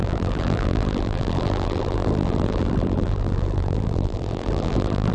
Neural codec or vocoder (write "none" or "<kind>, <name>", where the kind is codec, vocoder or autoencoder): vocoder, BigVGAN v2